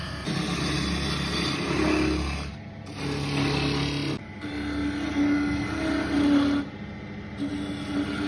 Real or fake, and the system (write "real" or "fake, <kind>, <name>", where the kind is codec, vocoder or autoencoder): real